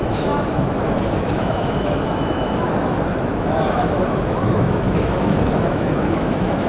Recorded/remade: remade